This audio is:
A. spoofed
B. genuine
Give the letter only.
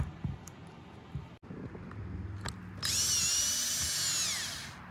B